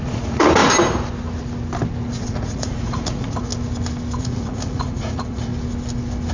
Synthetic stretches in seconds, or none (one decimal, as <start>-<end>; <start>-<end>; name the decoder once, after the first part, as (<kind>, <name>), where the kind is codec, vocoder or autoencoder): 0.0-0.6 (vocoder, Vocos); 2.1-3.5; 4.2-5.5